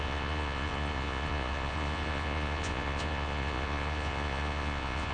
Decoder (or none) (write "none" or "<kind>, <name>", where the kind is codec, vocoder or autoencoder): vocoder, Vocos